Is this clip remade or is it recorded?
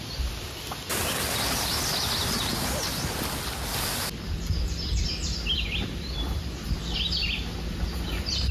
recorded